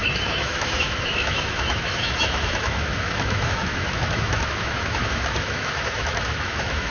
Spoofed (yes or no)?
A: yes